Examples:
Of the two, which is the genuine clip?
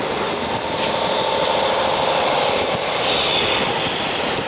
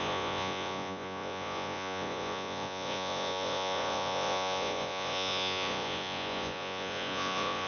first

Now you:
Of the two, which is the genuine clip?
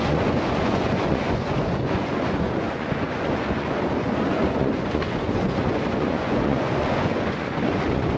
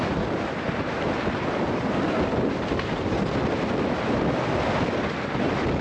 second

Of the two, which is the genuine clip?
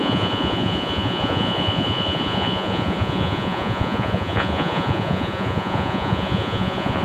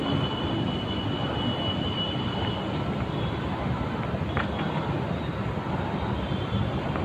second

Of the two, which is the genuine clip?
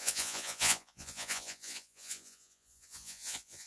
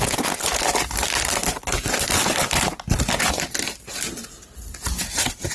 second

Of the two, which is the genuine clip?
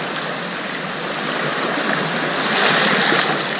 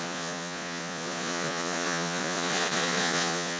first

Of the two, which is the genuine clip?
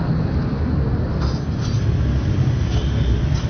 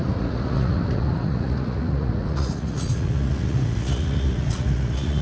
first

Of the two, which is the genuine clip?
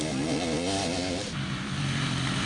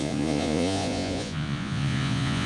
first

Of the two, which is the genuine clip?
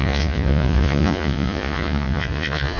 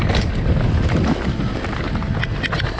second